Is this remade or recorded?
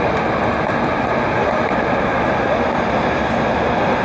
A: recorded